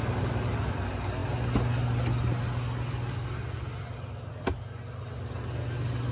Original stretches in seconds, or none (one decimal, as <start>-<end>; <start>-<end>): 0.7-6.1